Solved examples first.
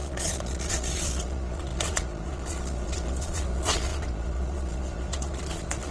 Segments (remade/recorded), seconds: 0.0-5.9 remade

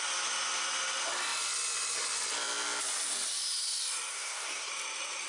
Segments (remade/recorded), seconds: 0.0-4.1 recorded; 4.1-4.7 remade; 4.7-5.3 recorded

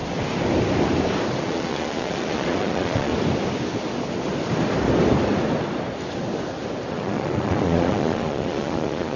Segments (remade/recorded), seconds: 0.0-1.4 recorded; 1.4-3.1 remade; 3.1-6.9 recorded; 6.9-9.2 remade

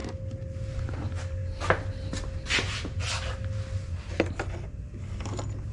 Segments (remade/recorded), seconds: 0.0-5.7 recorded

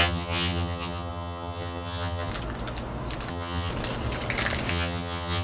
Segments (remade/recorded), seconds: 0.0-2.3 remade; 2.3-3.3 recorded; 3.3-3.7 remade; 3.7-4.7 recorded; 4.7-5.4 remade

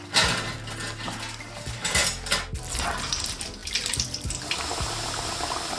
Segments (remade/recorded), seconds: 0.0-3.6 recorded; 3.6-4.4 remade; 4.4-5.8 recorded

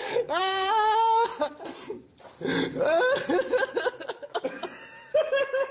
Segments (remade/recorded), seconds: 0.0-1.3 remade; 1.3-4.1 recorded; 4.1-4.6 remade; 4.6-5.1 recorded; 5.1-5.7 remade

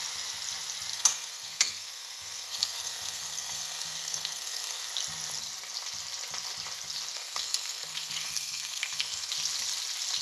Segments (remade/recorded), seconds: 0.0-0.9 recorded; 0.9-4.9 remade; 4.9-7.1 recorded; 7.1-9.3 remade; 9.3-10.2 recorded